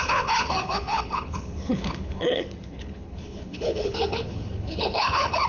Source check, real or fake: fake